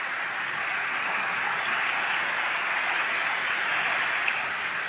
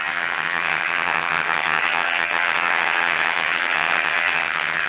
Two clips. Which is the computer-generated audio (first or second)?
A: second